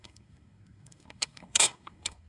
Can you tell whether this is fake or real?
fake